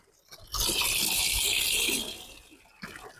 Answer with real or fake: real